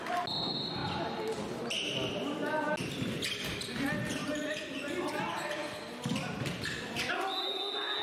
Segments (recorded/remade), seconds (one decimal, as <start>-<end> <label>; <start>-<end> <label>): 0.0-4.2 recorded; 4.2-4.7 remade; 4.7-8.0 recorded

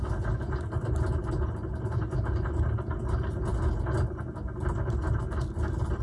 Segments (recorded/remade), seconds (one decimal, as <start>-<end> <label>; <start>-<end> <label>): 0.0-6.0 recorded

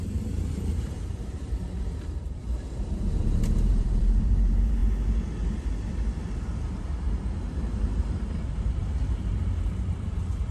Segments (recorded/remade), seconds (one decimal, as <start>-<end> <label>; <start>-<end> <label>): 0.0-4.8 remade; 4.8-7.7 recorded; 7.7-8.8 remade; 8.8-9.3 recorded; 9.3-10.5 remade

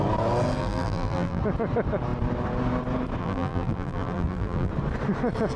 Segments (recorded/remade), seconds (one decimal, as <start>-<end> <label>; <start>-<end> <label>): 0.0-0.6 recorded; 0.6-1.4 remade; 1.4-3.2 recorded; 3.2-4.7 remade; 4.7-5.6 recorded

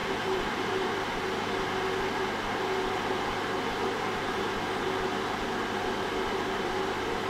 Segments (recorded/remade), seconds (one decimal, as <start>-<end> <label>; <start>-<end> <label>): 0.0-0.9 remade; 0.9-3.8 recorded; 3.8-4.4 remade; 4.4-7.3 recorded

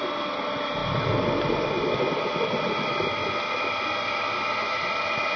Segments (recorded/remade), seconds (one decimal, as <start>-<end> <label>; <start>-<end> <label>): 0.0-0.8 recorded; 0.8-1.7 remade; 1.7-3.2 recorded; 3.2-5.0 remade; 5.0-5.4 recorded

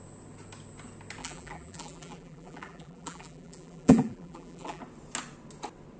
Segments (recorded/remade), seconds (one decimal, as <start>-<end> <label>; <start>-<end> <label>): 0.0-1.2 recorded; 1.2-4.8 remade; 4.8-6.0 recorded

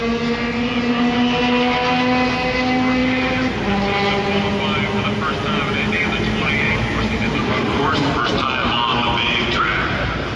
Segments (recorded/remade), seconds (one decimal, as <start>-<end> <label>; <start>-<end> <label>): 0.0-8.9 recorded; 8.9-9.6 remade; 9.6-10.4 recorded